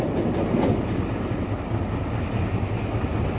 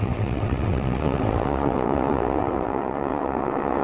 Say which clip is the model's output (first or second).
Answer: second